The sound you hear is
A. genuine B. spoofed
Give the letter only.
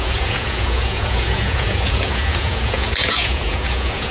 B